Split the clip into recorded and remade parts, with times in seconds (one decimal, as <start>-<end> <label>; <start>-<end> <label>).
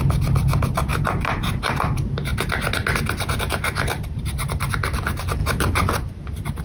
0.0-0.9 recorded; 0.9-1.4 remade; 1.4-5.4 recorded; 5.4-5.9 remade; 5.9-6.6 recorded